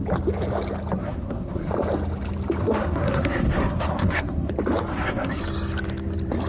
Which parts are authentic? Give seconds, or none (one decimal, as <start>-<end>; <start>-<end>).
0.0-1.0; 1.7-2.6; 4.5-4.9; 5.4-6.5